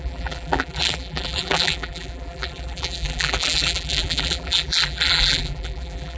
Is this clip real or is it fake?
fake